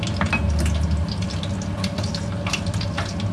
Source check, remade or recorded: recorded